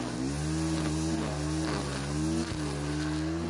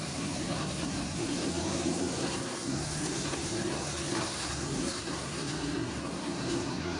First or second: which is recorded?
first